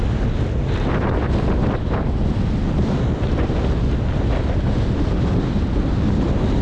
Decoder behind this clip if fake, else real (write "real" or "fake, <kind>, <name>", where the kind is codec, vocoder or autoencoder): real